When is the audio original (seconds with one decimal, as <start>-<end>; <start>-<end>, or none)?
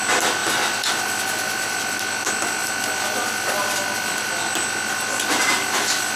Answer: 0.0-6.2